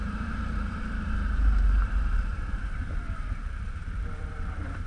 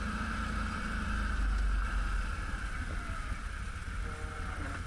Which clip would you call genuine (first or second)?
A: second